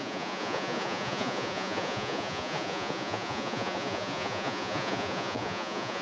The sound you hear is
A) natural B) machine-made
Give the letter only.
B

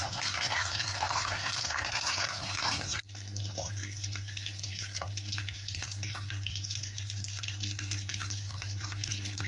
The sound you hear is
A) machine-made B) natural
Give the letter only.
A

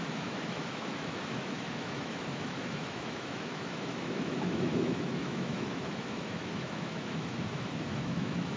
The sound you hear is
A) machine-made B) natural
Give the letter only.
A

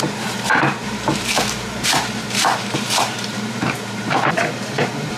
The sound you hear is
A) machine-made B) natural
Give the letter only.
A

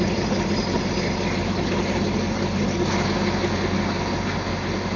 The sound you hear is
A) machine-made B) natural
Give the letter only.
B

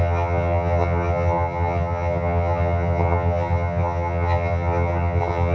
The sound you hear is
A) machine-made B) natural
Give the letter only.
A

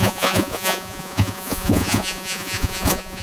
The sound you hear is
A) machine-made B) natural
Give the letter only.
A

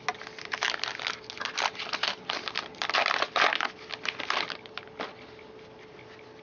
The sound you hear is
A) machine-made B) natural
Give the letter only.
B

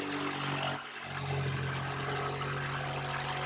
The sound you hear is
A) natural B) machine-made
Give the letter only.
A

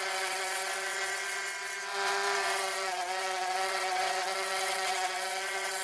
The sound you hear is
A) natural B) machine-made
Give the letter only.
B